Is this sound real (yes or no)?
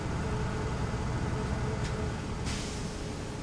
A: yes